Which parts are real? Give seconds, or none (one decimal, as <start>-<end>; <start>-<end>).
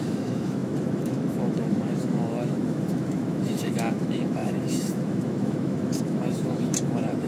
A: none